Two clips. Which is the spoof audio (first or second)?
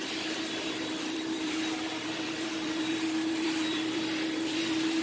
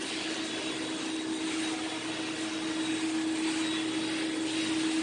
first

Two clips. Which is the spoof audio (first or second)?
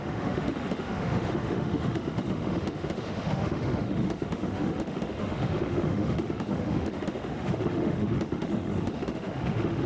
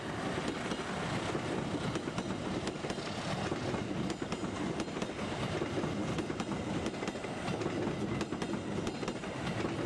first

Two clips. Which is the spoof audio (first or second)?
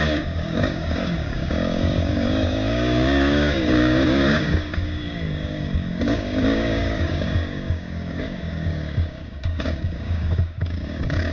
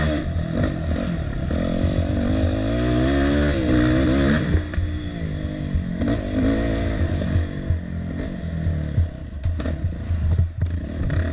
first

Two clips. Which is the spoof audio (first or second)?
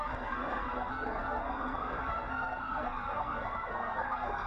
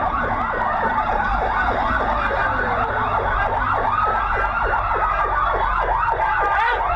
first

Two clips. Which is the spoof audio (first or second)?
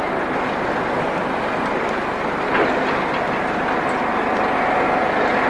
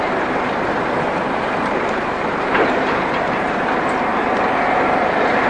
second